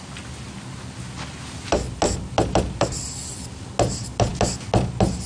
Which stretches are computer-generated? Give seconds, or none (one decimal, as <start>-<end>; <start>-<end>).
none